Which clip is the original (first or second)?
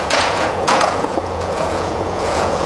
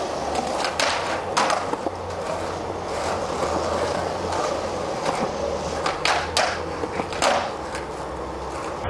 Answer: second